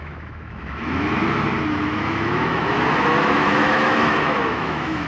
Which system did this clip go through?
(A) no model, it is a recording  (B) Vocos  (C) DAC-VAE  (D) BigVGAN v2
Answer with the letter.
C